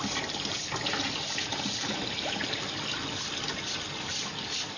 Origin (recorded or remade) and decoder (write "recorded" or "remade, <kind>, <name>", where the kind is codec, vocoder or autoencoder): recorded